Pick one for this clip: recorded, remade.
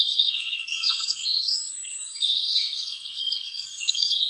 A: remade